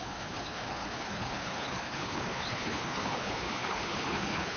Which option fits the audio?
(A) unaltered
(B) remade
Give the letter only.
B